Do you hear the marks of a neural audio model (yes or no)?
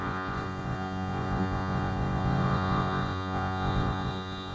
yes